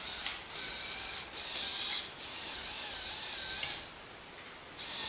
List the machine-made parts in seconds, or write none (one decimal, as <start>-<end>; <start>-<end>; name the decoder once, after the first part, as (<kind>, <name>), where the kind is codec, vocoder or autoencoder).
none